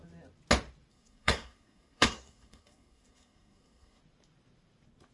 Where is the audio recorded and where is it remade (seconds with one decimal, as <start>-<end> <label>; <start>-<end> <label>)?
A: 0.0-0.9 recorded; 0.9-4.0 remade; 4.0-5.1 recorded